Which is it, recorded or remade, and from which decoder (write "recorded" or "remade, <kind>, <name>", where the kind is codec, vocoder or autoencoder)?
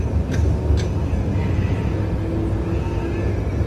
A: recorded